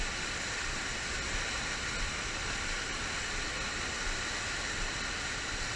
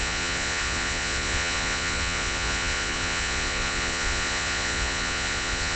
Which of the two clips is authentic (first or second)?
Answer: first